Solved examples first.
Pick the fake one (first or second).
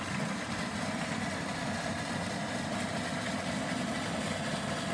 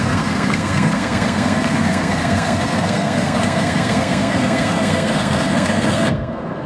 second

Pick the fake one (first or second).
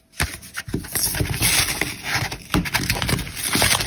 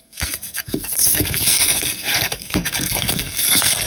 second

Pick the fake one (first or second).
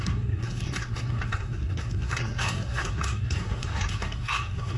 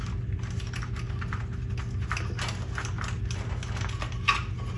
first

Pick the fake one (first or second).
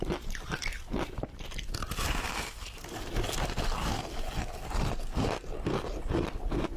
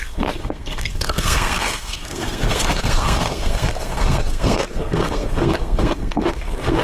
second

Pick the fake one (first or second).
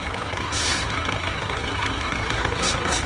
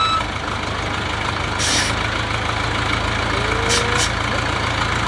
first